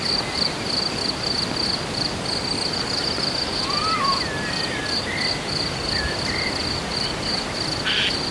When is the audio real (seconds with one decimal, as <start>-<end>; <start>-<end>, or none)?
0.0-8.3